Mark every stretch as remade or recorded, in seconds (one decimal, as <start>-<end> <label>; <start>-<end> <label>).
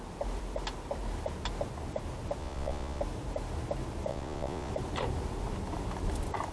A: 0.0-2.4 recorded; 2.4-3.0 remade; 3.0-4.1 recorded; 4.1-4.7 remade; 4.7-6.5 recorded